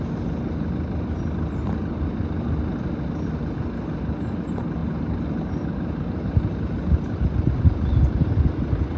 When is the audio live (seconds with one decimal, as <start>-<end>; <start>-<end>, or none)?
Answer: 0.0-4.8; 7.2-9.0

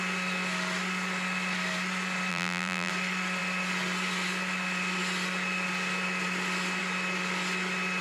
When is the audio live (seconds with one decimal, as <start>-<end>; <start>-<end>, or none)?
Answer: 0.0-2.3; 2.9-8.0

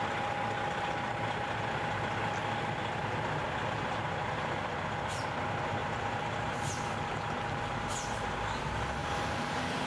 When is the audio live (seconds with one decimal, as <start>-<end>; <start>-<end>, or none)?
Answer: 0.0-5.8; 6.7-9.0

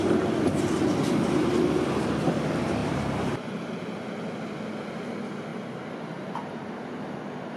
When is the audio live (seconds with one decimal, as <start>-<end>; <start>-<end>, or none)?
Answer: 0.0-2.8; 3.7-5.5; 6.7-7.6

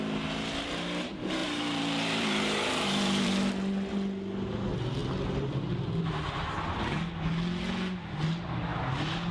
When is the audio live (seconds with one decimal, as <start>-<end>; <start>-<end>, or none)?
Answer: 0.0-1.4; 3.5-9.3

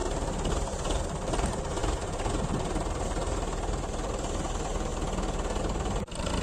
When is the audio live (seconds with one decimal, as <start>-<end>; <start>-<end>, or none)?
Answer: 0.0-0.5; 4.9-5.6